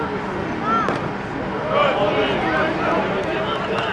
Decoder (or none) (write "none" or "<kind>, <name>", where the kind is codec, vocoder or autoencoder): none